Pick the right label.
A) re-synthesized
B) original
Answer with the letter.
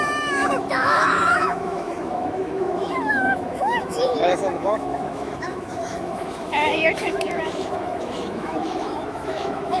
A